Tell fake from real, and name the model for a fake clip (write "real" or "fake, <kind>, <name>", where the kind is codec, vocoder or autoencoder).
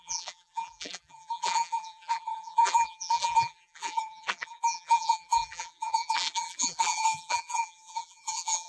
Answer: fake, vocoder, BigVGAN v2